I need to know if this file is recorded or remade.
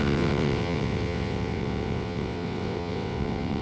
remade